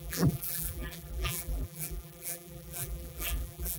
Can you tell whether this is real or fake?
fake